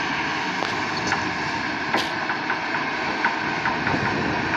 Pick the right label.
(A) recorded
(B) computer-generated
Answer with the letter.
A